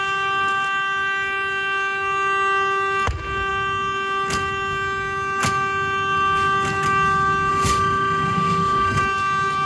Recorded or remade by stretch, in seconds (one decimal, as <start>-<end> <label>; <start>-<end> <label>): 0.0-7.5 recorded; 7.5-9.0 remade; 9.0-9.7 recorded